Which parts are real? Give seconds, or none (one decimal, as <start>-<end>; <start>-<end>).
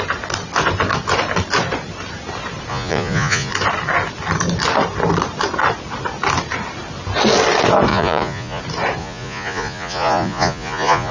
0.0-2.7; 3.5-7.9; 8.6-9.0